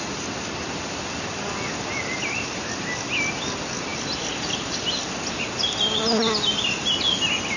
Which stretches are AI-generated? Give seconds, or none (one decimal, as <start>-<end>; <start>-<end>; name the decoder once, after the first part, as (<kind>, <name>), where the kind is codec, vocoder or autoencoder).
none